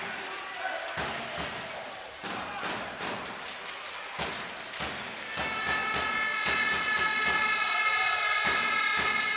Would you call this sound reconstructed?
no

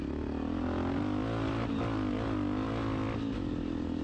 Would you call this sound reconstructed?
no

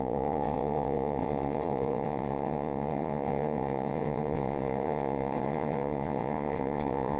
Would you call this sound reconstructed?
yes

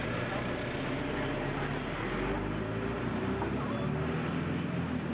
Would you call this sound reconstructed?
no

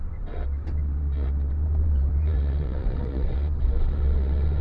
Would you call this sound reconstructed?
yes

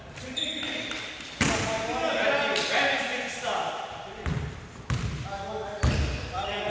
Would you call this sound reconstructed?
no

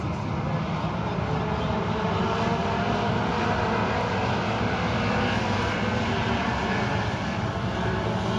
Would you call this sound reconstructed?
no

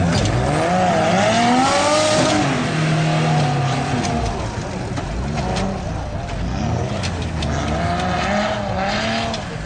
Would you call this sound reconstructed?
no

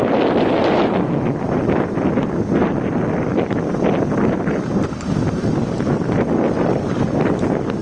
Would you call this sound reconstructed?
no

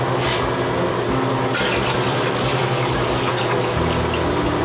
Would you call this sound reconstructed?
no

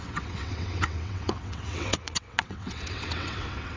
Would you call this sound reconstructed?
yes